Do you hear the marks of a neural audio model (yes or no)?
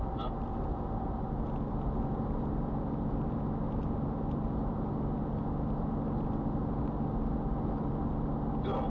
no